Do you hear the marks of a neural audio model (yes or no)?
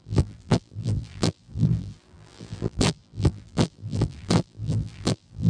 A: yes